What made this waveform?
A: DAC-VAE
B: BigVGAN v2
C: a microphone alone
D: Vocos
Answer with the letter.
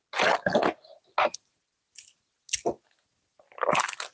C